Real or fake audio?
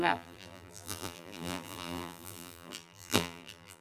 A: fake